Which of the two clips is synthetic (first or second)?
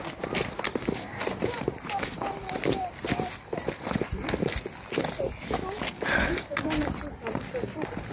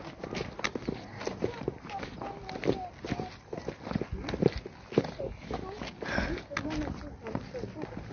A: first